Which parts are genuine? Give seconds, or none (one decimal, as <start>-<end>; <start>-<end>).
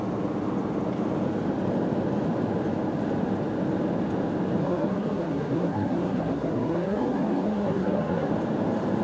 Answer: 0.0-4.6; 8.3-9.0